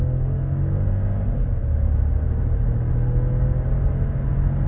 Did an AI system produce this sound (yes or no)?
no